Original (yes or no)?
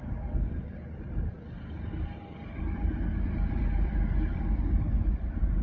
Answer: no